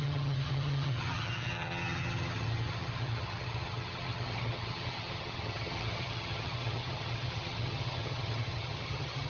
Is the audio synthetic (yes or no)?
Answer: yes